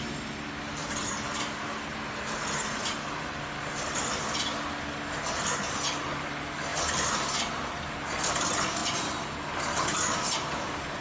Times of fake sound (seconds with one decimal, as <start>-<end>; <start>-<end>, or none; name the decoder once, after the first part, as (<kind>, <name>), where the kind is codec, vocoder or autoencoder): none